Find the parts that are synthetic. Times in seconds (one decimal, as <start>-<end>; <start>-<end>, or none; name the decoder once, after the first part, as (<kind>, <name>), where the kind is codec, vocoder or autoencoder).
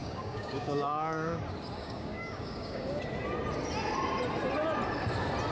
0.0-1.4 (codec, DAC); 1.8-3.0